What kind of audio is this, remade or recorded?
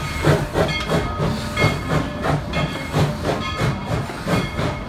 recorded